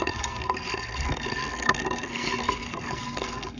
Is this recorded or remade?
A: remade